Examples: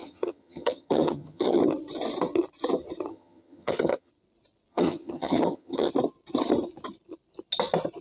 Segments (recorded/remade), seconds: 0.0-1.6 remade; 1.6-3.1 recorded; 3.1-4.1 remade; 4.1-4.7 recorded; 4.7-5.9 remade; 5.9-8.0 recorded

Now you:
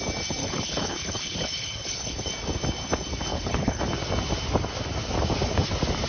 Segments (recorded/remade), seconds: 0.0-0.4 recorded; 0.4-2.3 remade; 2.3-3.3 recorded; 3.3-3.8 remade; 3.8-6.1 recorded

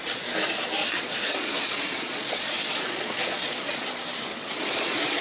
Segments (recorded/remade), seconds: 0.0-0.8 recorded; 0.8-3.9 remade; 3.9-4.3 recorded; 4.3-5.2 remade

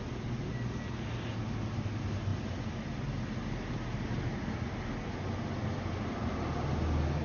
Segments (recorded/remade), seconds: 0.0-7.2 recorded